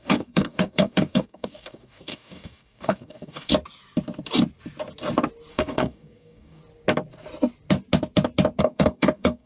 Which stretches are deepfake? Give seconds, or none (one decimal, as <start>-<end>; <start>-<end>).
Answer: 0.0-3.5; 5.5-6.6; 8.6-9.5